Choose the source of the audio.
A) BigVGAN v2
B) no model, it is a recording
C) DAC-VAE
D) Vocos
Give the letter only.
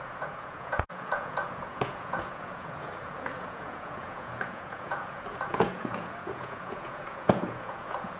D